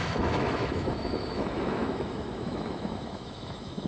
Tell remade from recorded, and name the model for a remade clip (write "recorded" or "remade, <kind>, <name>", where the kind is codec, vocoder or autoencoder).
remade, autoencoder, DAC-VAE